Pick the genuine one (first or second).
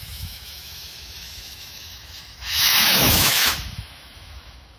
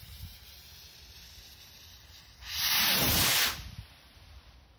second